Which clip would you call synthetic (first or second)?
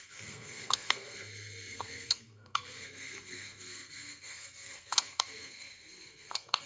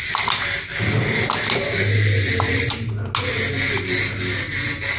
first